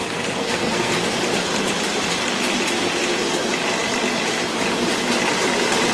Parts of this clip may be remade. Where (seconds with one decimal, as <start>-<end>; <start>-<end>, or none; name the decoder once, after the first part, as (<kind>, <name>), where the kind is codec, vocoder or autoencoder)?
0.0-0.9 (codec, SNAC)